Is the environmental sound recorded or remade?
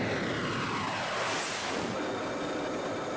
recorded